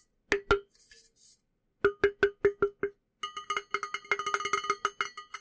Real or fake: real